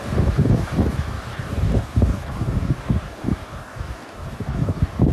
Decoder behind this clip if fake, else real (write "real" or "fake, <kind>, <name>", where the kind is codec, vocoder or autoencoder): fake, codec, DAC